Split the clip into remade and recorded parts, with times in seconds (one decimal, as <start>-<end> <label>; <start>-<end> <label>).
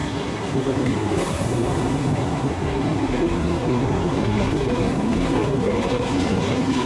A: 0.0-6.9 remade